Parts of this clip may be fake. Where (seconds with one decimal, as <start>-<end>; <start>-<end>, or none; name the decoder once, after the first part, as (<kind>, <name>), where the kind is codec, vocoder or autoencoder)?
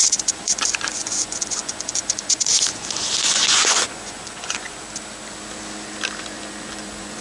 0.0-4.8 (vocoder, Vocos); 6.2-7.2